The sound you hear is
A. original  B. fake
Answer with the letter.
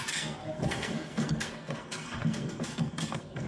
B